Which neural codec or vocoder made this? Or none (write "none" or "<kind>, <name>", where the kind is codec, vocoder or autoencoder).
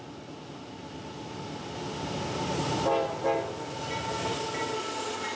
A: none